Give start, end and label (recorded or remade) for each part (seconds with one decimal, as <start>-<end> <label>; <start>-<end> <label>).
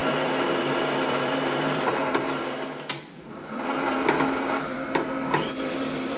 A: 0.0-6.2 remade